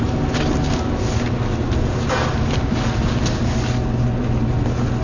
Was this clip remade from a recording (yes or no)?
no